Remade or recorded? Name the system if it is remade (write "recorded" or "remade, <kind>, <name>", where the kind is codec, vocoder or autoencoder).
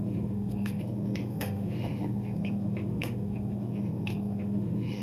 remade, autoencoder, DAC-VAE